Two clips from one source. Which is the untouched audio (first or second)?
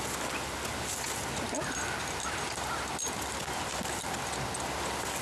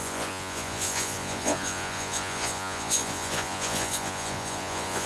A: first